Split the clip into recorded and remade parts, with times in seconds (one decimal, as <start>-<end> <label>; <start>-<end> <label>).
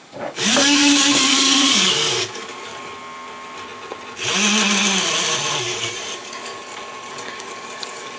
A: 0.0-2.7 remade; 2.7-5.5 recorded; 5.5-6.5 remade; 6.5-7.1 recorded; 7.1-8.2 remade